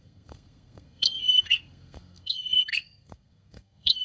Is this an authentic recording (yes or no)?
no